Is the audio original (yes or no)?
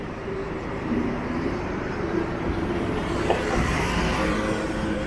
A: no